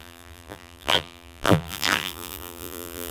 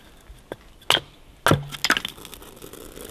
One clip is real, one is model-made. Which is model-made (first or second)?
first